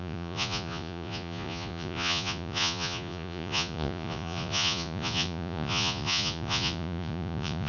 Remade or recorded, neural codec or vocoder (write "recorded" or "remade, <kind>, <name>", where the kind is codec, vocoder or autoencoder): remade, vocoder, Vocos